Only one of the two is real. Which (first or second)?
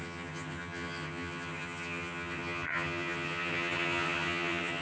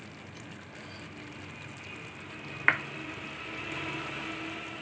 second